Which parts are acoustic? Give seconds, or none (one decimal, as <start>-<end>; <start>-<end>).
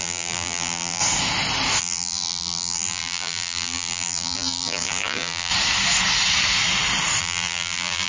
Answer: 1.0-1.8; 5.5-7.2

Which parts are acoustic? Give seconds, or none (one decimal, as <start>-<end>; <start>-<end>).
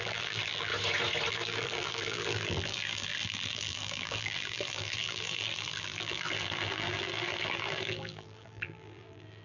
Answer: 0.7-1.3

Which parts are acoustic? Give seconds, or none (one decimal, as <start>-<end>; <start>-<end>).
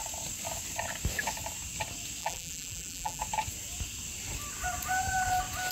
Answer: 0.0-2.2; 3.2-5.7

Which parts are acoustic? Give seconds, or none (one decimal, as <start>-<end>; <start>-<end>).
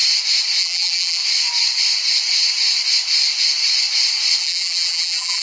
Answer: 0.0-0.6; 1.2-4.4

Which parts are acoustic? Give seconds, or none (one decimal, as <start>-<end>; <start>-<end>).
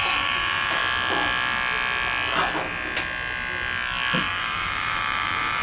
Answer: 0.8-4.2